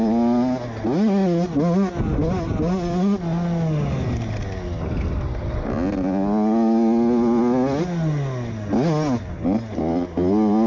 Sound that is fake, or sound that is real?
real